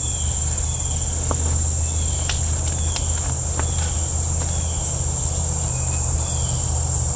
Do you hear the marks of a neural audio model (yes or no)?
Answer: no